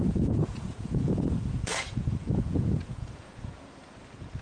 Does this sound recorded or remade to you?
remade